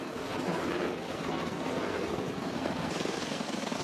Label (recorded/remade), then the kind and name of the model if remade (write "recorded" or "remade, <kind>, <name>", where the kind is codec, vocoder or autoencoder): remade, codec, SNAC